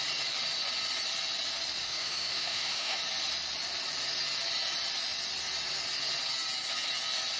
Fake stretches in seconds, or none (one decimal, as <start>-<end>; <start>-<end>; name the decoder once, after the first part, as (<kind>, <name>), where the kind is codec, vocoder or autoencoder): 1.8-3.0 (autoencoder, DAC-VAE)